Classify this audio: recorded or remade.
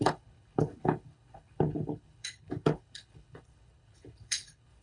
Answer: remade